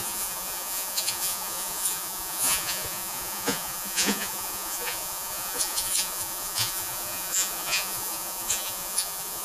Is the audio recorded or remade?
remade